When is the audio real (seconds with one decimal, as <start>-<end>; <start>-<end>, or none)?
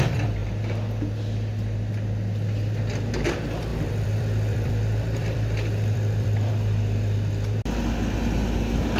0.0-3.7; 4.7-5.2; 6.5-9.0